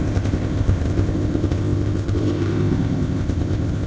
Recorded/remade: remade